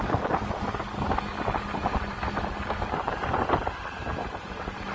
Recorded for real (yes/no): yes